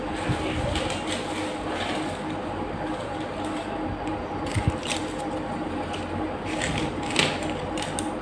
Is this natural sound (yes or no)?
yes